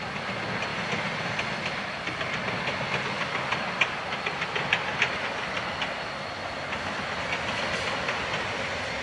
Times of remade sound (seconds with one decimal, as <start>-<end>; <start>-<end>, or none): none